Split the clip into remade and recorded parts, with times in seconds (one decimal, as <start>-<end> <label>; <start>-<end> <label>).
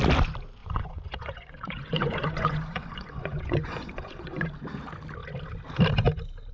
0.0-0.6 recorded; 0.6-4.5 remade; 4.5-6.5 recorded